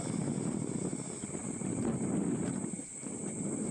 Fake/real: real